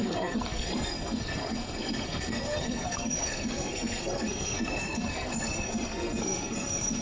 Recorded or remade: remade